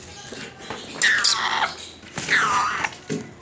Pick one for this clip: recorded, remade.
recorded